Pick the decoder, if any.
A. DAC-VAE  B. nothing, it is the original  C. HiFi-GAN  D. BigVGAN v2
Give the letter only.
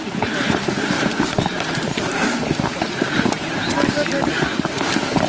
D